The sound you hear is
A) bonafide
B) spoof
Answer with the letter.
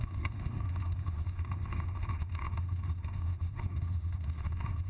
B